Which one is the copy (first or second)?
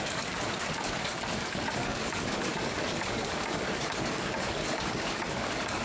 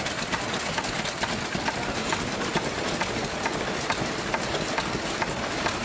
first